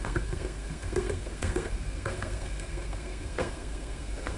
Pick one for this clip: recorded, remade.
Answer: remade